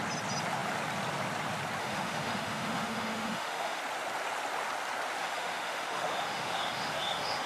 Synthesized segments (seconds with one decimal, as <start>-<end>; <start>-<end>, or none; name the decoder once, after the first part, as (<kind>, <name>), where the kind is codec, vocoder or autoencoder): 1.8-3.8 (autoencoder, DAC-VAE); 5.2-7.5